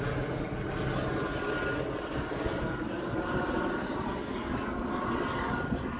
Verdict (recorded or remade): recorded